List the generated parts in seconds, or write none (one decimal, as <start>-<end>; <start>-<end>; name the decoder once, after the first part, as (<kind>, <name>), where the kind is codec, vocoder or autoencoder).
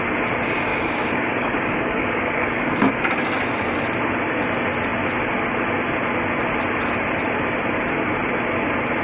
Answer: 0.7-3.4 (codec, DAC)